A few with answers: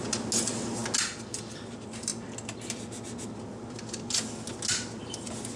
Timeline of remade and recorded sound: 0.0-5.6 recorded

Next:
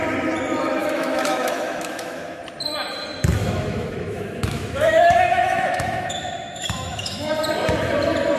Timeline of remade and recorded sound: 0.0-0.8 recorded; 0.8-2.4 remade; 2.4-3.4 recorded; 3.4-7.3 remade; 7.3-8.4 recorded

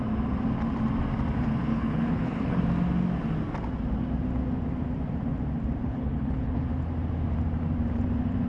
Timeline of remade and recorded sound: 0.0-1.7 recorded; 1.7-2.6 remade; 2.6-5.8 recorded; 5.8-6.7 remade; 6.7-8.5 recorded

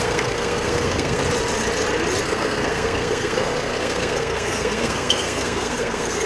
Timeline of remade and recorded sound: 0.0-1.2 remade; 1.2-2.2 recorded; 2.2-6.3 remade

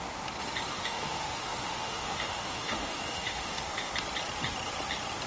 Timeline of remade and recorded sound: 0.0-0.7 recorded; 0.7-3.9 remade; 3.9-5.3 recorded